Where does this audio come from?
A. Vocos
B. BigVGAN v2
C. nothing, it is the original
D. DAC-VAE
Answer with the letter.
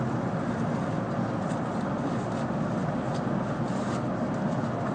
C